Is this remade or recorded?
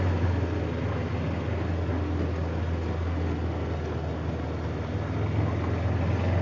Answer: recorded